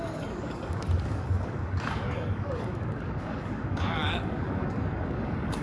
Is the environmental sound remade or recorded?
remade